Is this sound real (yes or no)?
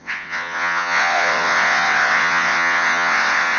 no